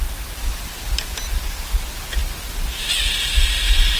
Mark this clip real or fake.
real